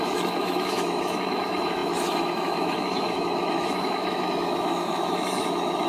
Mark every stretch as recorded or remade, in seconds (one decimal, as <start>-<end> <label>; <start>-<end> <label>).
0.0-5.9 remade